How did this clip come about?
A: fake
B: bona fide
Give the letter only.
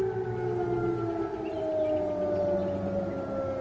B